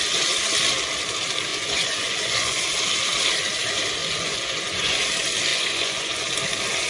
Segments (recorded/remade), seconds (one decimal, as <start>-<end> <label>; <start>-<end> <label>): 0.0-1.5 recorded; 1.5-2.6 remade; 2.6-4.0 recorded; 4.0-5.0 remade; 5.0-5.5 recorded; 5.5-6.2 remade; 6.2-6.9 recorded